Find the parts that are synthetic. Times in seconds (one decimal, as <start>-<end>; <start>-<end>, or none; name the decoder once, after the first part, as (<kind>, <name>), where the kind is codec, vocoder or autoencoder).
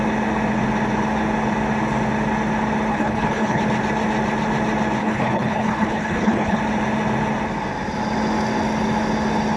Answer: 2.9-3.6 (codec, HILCodec); 5.0-6.6